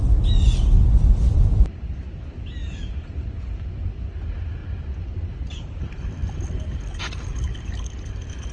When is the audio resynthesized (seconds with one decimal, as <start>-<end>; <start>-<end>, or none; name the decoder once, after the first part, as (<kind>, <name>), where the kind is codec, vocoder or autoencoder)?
none